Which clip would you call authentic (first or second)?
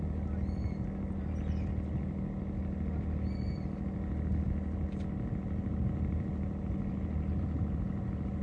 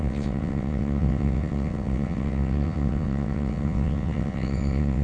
first